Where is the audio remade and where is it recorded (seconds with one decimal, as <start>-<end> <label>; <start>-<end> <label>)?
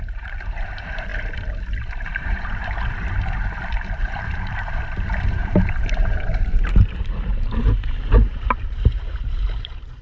0.0-1.1 remade; 1.1-1.8 recorded; 1.8-2.6 remade; 2.6-3.6 recorded; 3.6-10.0 remade